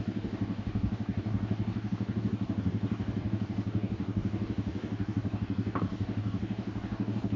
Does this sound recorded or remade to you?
remade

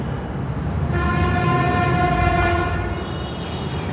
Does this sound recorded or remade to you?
recorded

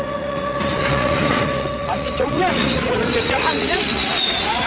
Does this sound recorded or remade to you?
remade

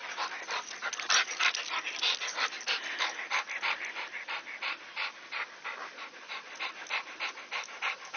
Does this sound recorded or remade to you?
recorded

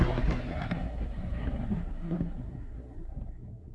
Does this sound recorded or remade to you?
remade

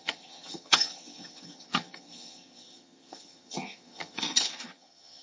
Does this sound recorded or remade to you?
remade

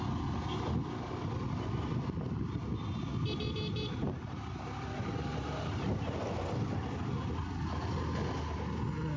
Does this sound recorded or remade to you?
recorded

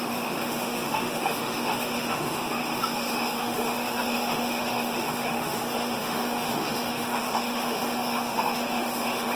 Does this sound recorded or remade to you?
remade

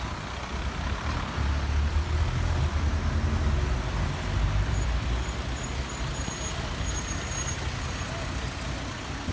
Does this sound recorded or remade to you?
recorded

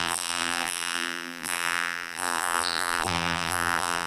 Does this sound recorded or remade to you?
remade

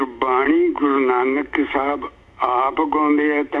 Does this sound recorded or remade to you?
remade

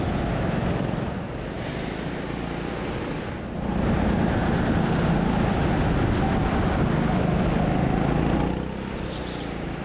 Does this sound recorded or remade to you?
recorded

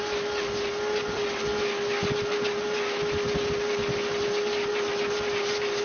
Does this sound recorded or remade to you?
recorded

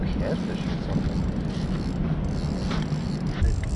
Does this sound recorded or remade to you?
recorded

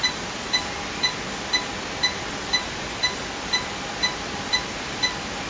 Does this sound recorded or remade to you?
recorded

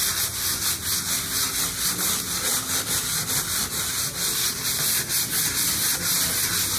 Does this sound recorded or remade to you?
recorded